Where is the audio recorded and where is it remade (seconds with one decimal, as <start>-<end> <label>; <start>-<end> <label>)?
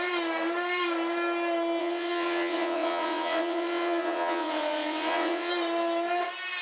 0.0-1.8 recorded; 1.8-5.5 remade; 5.5-6.6 recorded